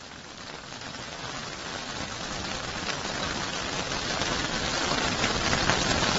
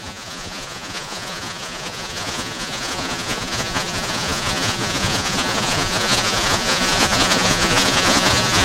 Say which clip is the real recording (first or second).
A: first